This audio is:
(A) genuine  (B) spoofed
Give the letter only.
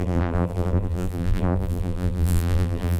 B